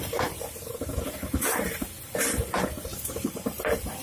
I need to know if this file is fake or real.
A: fake